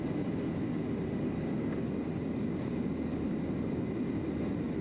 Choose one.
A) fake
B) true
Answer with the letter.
B